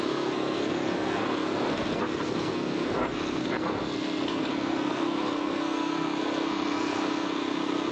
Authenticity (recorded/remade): remade